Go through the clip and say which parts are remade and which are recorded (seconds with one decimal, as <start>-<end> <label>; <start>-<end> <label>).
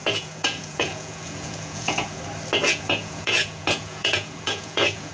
0.0-2.2 remade; 2.2-2.6 recorded; 2.6-5.1 remade